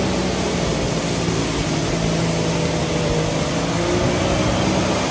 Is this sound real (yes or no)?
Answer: yes